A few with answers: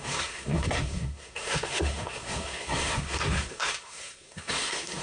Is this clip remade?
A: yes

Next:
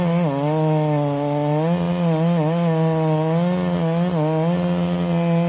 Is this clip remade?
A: no